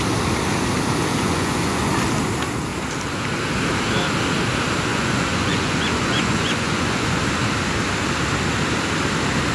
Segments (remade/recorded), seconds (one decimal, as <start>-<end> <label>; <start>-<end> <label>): 0.0-1.1 recorded; 1.1-1.9 remade; 1.9-4.9 recorded; 4.9-7.2 remade; 7.2-9.5 recorded